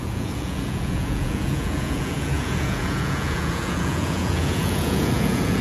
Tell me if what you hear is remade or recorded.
remade